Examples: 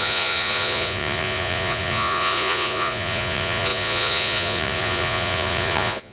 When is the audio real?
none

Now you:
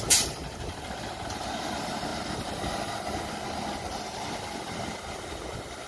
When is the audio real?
0.0-5.9

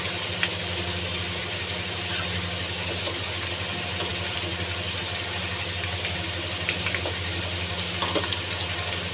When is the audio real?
0.0-4.1; 7.7-9.1

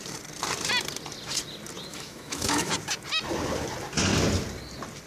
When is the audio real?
0.0-1.9; 2.7-5.1

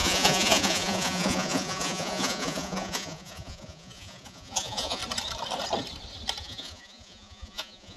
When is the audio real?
5.0-6.4